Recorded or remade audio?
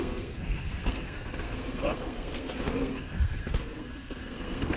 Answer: remade